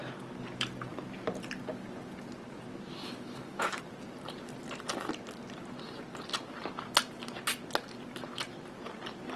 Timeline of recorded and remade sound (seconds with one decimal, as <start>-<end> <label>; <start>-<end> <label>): 0.0-3.0 recorded; 3.0-3.8 remade; 3.8-9.4 recorded